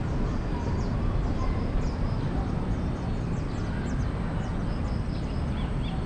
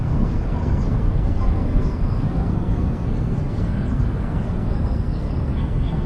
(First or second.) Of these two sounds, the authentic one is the first